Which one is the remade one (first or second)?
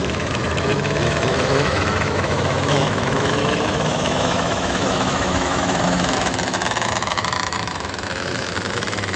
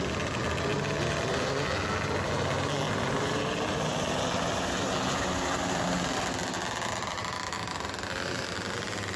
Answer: first